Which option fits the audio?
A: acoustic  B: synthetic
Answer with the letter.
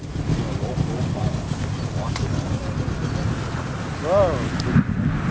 A